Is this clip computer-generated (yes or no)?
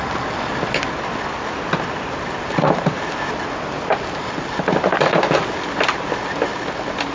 no